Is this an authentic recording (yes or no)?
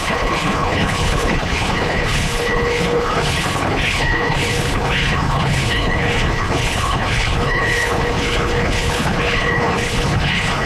no